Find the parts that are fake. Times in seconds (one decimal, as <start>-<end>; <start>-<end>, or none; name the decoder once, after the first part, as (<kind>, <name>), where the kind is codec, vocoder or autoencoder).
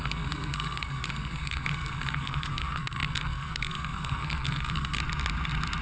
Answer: 0.0-5.0 (codec, SNAC)